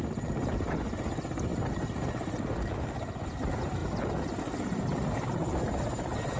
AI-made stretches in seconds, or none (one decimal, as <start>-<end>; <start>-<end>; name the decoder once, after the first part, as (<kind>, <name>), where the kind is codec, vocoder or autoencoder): none